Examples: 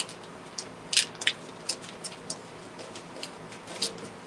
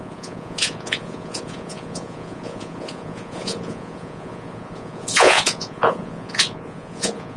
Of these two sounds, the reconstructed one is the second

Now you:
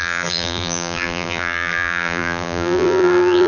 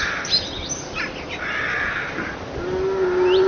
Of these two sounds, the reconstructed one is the first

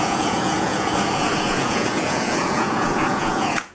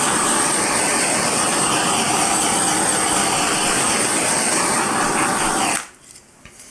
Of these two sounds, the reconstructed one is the first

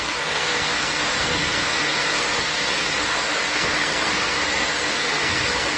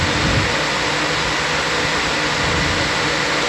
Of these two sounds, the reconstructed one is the first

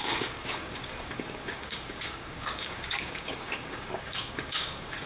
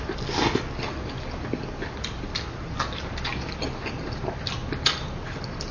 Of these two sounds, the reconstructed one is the first